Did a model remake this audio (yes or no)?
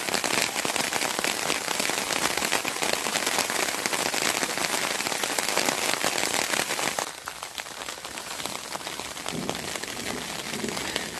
no